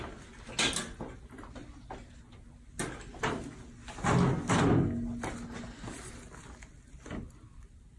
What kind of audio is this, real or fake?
real